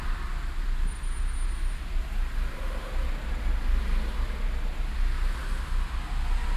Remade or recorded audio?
recorded